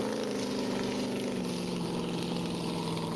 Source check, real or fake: real